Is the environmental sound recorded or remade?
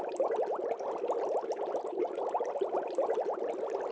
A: recorded